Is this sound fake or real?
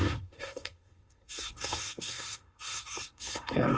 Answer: fake